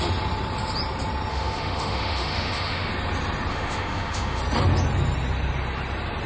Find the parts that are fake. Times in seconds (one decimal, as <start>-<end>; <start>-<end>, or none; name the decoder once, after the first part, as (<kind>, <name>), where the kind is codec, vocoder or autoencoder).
1.3-2.9 (autoencoder, DAC-VAE); 3.5-4.4